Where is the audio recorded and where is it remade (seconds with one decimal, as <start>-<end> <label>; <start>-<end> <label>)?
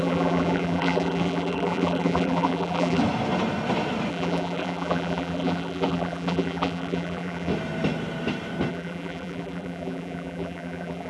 0.0-3.0 remade; 3.0-4.1 recorded; 4.1-7.5 remade; 7.5-8.7 recorded; 8.7-11.1 remade